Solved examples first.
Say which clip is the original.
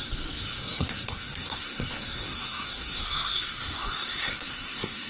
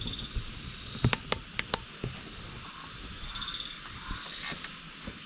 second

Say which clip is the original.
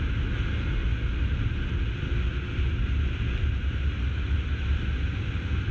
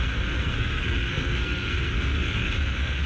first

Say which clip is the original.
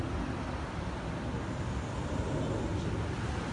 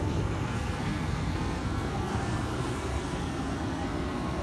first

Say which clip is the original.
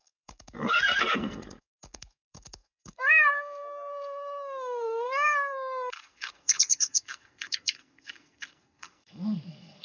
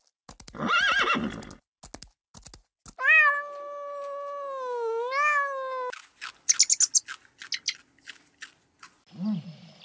second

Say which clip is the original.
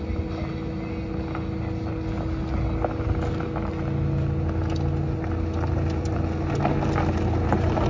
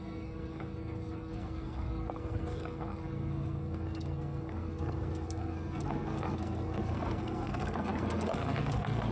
first